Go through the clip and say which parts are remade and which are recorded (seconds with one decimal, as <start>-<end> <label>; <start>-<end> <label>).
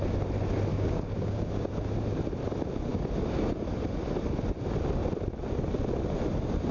0.0-0.7 recorded; 0.7-1.7 remade; 1.7-6.7 recorded